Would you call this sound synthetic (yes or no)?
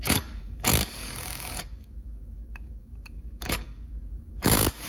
yes